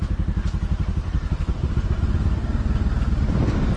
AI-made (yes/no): no